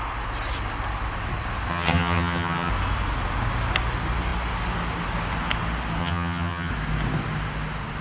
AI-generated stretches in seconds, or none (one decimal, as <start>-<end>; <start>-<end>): 1.7-2.7; 6.0-6.7